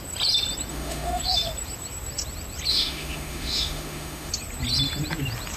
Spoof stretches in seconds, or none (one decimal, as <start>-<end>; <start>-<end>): 0.7-1.2; 2.7-4.3

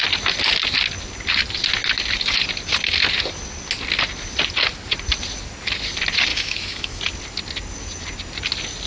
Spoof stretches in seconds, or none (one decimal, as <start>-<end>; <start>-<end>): 6.3-7.0

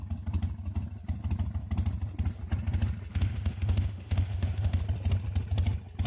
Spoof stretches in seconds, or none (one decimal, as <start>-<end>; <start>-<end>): 3.1-4.8

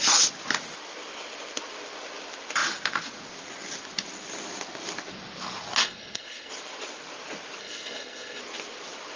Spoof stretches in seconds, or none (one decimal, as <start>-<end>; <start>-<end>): 5.8-6.5; 7.6-8.4

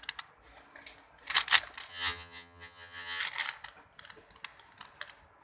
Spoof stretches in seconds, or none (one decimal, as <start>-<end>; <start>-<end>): 1.9-3.2

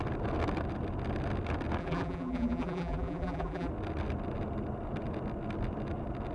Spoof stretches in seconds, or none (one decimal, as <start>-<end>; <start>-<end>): 1.8-3.7

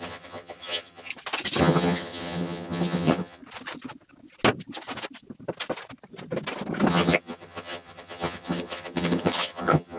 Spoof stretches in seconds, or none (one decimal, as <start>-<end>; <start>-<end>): 0.0-1.1; 1.6-3.4; 6.9-10.0